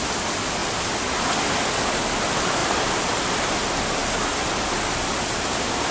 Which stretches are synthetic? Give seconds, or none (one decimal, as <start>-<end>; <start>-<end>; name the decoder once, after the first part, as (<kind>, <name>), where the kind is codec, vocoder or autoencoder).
2.6-3.5 (vocoder, BigVGAN v2)